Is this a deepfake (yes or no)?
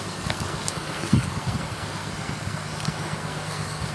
yes